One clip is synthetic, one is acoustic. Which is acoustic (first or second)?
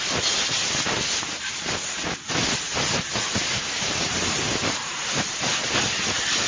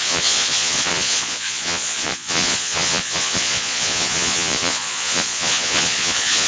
first